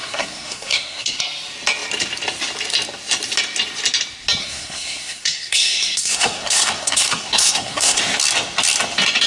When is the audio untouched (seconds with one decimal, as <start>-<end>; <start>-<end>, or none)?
1.2-4.4; 8.0-9.3